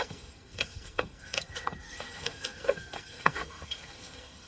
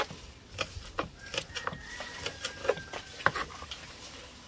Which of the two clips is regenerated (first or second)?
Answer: first